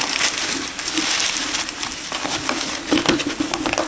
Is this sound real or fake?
real